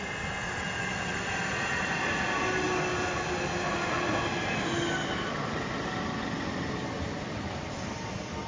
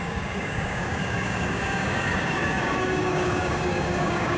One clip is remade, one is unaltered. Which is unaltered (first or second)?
first